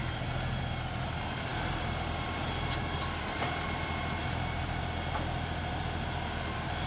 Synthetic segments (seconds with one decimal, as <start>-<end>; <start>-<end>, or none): 4.2-4.8